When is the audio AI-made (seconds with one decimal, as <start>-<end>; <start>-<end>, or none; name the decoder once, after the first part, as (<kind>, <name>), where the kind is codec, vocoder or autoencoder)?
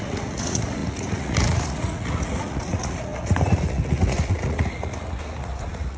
0.0-6.0 (vocoder, Vocos)